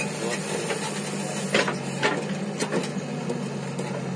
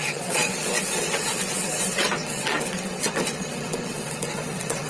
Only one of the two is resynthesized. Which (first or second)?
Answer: second